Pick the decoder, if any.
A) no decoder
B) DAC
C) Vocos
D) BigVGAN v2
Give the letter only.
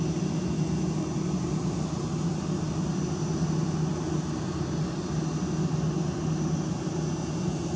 A